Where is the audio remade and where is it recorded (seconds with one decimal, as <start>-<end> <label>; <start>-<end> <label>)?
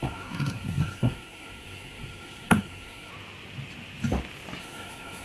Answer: 0.0-3.1 remade; 3.1-4.6 recorded; 4.6-5.2 remade